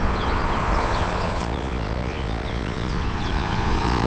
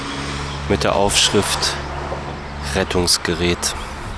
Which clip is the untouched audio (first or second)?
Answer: second